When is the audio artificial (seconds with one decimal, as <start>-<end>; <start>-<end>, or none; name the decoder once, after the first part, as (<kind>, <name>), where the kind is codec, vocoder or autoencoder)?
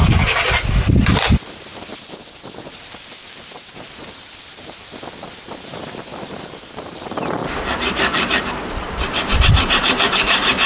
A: 0.8-1.9 (vocoder, BigVGAN v2); 3.4-10.7